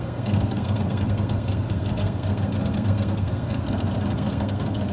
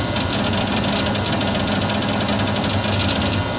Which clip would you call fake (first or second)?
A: first